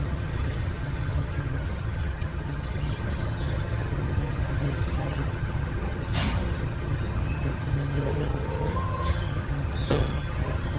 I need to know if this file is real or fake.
fake